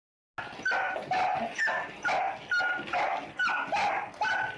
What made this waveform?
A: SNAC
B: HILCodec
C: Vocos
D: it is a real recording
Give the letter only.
D